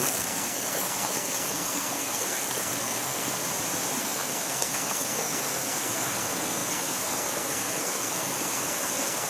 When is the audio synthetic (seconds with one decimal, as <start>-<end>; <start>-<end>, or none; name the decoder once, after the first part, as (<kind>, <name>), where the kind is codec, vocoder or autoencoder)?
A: 0.0-3.4 (codec, SNAC); 4.0-9.3